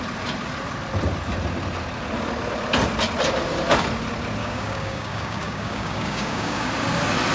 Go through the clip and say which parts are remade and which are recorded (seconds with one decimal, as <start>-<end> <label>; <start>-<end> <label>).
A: 0.0-4.4 recorded; 4.4-6.7 remade; 6.7-7.3 recorded